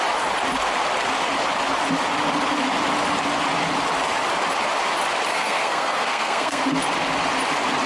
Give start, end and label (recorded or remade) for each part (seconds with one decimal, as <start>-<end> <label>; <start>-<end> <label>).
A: 0.0-5.3 recorded; 5.3-6.6 remade; 6.6-7.9 recorded